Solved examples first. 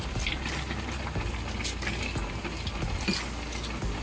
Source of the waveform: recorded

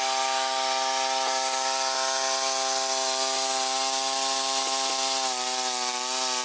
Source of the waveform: recorded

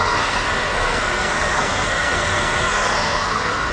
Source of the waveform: remade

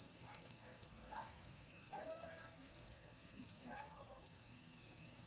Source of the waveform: remade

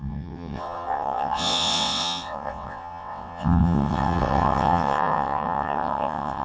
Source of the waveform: remade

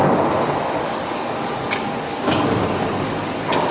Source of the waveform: remade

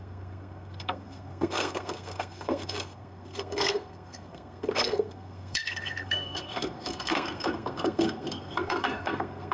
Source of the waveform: remade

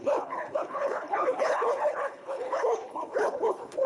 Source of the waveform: remade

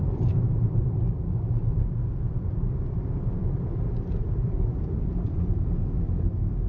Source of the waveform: remade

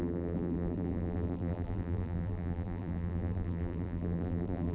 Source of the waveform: remade